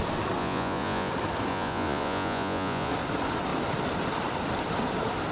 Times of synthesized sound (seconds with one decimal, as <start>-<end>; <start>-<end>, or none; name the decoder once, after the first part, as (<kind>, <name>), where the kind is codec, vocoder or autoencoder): 0.4-1.1 (vocoder, Vocos); 1.5-2.9